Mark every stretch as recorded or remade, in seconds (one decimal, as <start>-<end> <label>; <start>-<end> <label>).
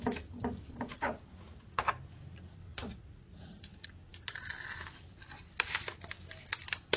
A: 0.0-1.3 recorded; 1.3-1.9 remade; 1.9-2.7 recorded; 2.7-3.9 remade; 3.9-7.0 recorded